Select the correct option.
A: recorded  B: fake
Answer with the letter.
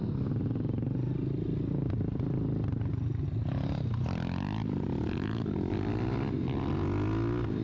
A